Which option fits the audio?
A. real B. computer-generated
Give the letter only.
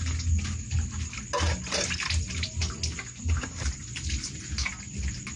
A